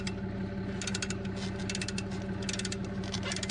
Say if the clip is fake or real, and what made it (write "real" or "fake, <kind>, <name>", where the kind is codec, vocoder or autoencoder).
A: real